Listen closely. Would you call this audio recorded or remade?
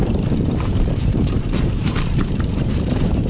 remade